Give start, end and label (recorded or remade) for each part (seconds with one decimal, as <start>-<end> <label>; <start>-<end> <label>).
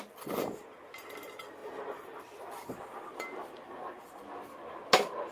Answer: 0.0-1.6 recorded; 1.6-4.0 remade; 4.0-5.3 recorded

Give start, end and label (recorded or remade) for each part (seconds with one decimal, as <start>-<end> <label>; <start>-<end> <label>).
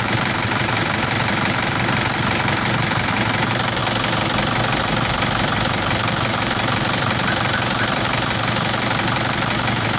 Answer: 0.0-3.8 remade; 3.8-4.8 recorded; 4.8-10.0 remade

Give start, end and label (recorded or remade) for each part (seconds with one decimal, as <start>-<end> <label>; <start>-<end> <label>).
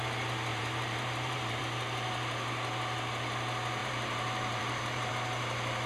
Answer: 0.0-0.5 recorded; 0.5-1.6 remade; 1.6-3.8 recorded; 3.8-5.1 remade; 5.1-5.9 recorded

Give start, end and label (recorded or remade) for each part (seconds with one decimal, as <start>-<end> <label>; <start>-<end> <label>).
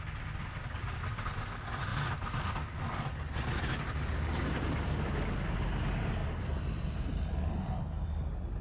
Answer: 0.0-6.2 recorded; 6.2-7.5 remade; 7.5-8.6 recorded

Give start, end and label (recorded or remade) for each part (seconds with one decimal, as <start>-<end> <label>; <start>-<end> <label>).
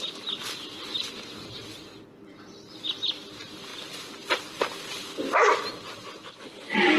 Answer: 0.0-7.0 recorded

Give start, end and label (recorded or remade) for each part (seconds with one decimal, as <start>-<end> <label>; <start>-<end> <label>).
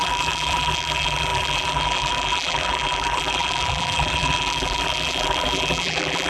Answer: 0.0-6.3 remade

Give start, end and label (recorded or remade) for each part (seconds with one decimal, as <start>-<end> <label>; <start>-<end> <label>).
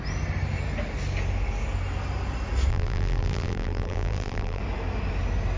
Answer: 0.0-2.7 recorded; 2.7-4.6 remade; 4.6-5.6 recorded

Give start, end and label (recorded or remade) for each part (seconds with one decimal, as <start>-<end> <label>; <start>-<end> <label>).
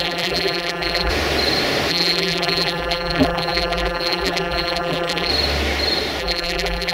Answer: 0.0-1.1 remade; 1.1-1.9 recorded; 1.9-5.3 remade; 5.3-6.2 recorded; 6.2-6.9 remade